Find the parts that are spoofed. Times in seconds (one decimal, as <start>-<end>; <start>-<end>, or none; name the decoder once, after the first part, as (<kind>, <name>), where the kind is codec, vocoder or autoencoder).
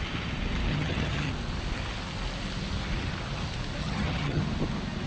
0.7-1.3 (vocoder, HiFi-GAN); 3.8-4.4